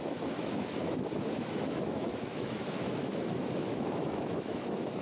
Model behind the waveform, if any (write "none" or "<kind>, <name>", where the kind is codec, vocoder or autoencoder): autoencoder, DAC-VAE